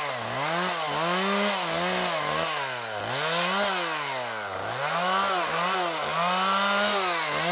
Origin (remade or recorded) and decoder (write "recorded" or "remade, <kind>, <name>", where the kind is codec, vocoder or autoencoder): recorded